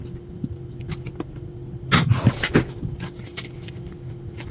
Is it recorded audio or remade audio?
recorded